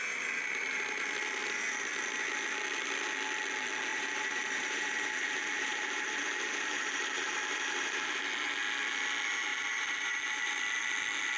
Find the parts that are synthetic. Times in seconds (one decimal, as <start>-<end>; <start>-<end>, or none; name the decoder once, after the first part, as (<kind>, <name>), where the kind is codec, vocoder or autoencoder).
3.9-8.3 (vocoder, BigVGAN v2); 9.5-10.6